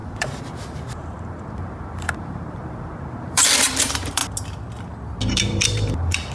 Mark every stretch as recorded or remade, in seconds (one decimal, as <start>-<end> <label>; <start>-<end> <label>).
0.0-4.2 remade; 4.2-5.3 recorded; 5.3-6.3 remade